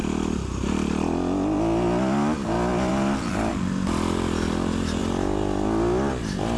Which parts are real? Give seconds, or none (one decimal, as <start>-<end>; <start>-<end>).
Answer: 0.0-6.6